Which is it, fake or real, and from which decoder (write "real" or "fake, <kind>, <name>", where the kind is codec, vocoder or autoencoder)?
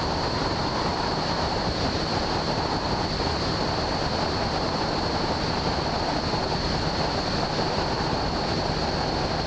real